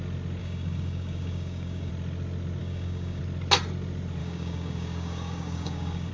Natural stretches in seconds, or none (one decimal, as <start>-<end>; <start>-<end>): 0.0-0.4; 1.9-2.6; 3.2-4.2